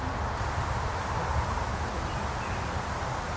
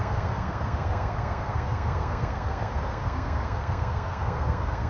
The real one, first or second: first